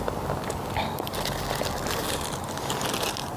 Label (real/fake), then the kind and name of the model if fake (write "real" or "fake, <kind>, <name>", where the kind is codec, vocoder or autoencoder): real